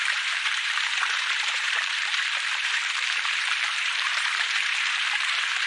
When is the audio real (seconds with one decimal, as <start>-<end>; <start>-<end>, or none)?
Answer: none